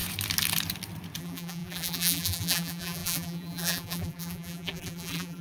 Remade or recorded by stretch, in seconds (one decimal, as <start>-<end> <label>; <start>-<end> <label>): 0.0-1.2 recorded; 1.2-5.4 remade

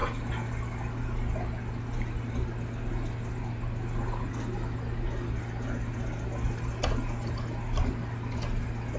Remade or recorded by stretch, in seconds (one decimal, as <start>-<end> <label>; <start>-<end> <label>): 0.0-9.0 recorded

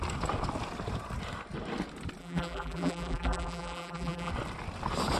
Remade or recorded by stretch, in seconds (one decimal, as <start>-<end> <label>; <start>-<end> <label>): 0.0-2.2 recorded; 2.2-4.3 remade; 4.3-5.2 recorded

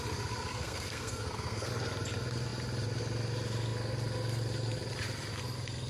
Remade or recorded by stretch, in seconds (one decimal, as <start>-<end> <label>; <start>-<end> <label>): 0.0-0.5 recorded; 0.5-1.7 remade; 1.7-5.9 recorded

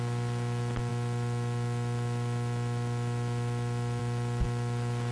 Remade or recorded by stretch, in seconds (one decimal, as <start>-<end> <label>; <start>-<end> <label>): 0.0-5.1 recorded